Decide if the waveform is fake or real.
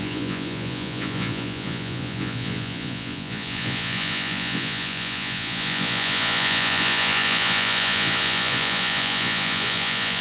fake